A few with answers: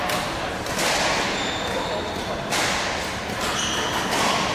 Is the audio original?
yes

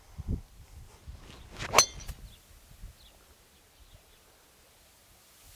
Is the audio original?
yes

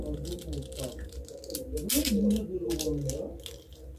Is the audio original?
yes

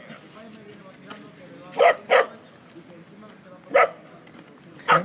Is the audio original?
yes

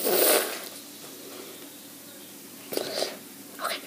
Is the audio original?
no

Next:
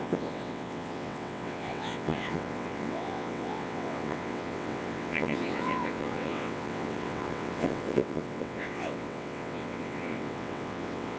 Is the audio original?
no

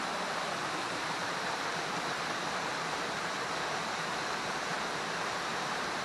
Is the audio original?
no